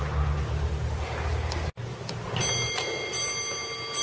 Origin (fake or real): real